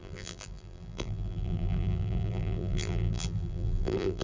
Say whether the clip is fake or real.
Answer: fake